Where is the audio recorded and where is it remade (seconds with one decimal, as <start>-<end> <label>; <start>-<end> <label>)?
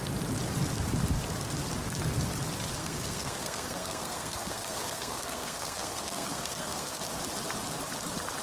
0.0-2.8 recorded; 2.8-7.0 remade; 7.0-8.4 recorded